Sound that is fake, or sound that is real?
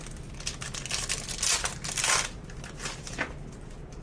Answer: real